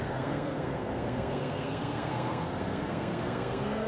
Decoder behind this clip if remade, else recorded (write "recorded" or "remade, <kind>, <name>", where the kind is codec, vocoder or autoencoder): remade, codec, SNAC